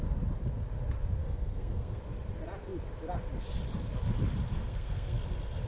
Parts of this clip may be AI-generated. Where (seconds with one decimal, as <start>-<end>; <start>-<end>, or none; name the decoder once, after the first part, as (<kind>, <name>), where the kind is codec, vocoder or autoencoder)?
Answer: 1.2-2.0 (codec, SNAC); 4.5-5.2